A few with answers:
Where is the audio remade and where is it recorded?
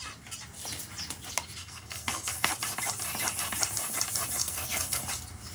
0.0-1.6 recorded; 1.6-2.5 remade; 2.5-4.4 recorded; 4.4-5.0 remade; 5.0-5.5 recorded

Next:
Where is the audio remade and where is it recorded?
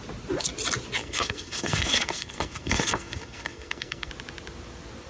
0.0-1.0 recorded; 1.0-4.1 remade; 4.1-5.1 recorded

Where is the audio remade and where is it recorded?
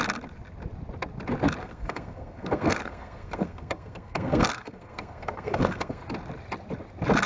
0.0-1.6 recorded; 1.6-6.0 remade; 6.0-7.3 recorded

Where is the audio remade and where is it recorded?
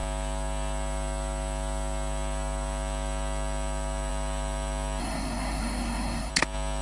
0.0-5.0 recorded; 5.0-6.3 remade; 6.3-6.8 recorded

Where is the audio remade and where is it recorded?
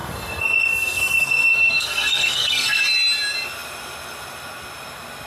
0.0-2.8 remade; 2.8-5.3 recorded